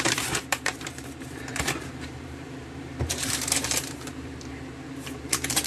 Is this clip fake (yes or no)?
yes